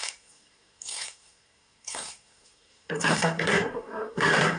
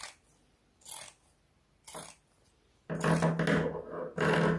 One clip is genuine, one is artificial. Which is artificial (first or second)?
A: first